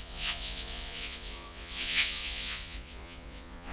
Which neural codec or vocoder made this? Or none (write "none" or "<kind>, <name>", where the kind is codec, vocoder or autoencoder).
vocoder, Vocos